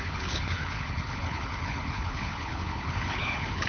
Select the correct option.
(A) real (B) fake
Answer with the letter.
B